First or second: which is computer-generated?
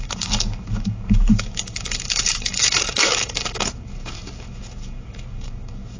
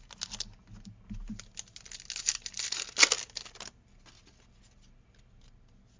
first